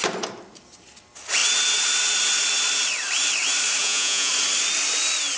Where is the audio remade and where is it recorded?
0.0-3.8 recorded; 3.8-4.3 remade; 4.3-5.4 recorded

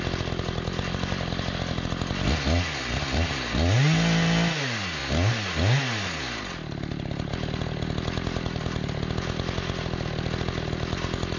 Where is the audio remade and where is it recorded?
0.0-11.4 recorded

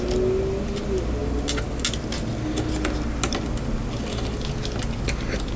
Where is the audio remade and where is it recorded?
0.0-5.6 recorded

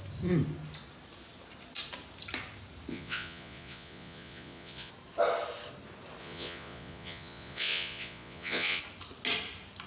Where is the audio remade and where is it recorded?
0.0-2.9 recorded; 2.9-4.9 remade; 4.9-6.2 recorded; 6.2-8.8 remade; 8.8-9.9 recorded